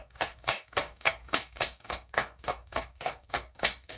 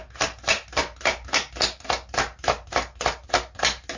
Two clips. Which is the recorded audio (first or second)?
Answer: second